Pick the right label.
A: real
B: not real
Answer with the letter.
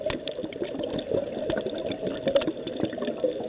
A